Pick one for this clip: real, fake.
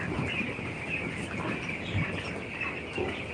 real